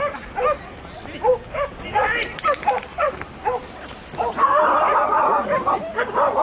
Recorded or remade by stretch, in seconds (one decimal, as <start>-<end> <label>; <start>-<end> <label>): 0.0-1.3 recorded; 1.3-1.8 remade; 1.8-6.4 recorded